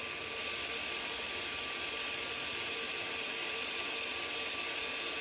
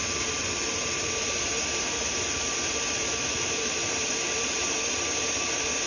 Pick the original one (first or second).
first